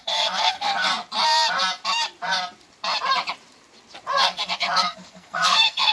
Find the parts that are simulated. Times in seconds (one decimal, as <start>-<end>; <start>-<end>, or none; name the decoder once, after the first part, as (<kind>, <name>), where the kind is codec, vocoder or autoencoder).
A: 0.0-0.9 (codec, SNAC); 4.2-5.9